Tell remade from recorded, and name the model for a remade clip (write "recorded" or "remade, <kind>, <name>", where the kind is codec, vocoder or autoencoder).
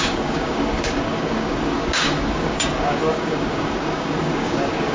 remade, codec, DAC